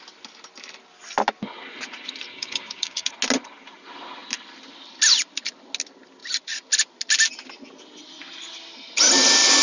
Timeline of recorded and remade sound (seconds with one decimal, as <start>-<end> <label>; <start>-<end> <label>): 0.0-2.3 recorded; 2.3-3.1 remade; 3.1-9.6 recorded